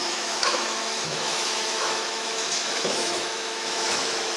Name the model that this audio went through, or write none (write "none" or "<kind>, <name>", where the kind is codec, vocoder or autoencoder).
autoencoder, DAC-VAE